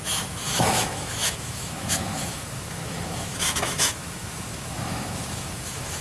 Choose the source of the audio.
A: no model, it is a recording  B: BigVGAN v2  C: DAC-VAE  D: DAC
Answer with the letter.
C